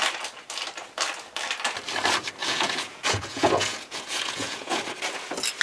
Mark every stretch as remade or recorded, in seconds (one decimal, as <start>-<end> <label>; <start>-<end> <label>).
0.0-2.4 recorded; 2.4-4.8 remade; 4.8-5.6 recorded